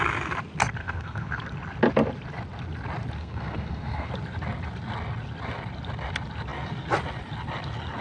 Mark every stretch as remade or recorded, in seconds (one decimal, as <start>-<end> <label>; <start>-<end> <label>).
0.0-0.8 recorded; 0.8-1.3 remade; 1.3-3.2 recorded; 3.2-4.1 remade; 4.1-8.0 recorded